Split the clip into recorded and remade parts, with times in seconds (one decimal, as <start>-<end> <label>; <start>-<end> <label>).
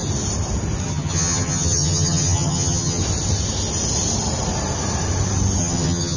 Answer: 0.0-0.8 recorded; 0.8-3.0 remade; 3.0-5.6 recorded; 5.6-6.2 remade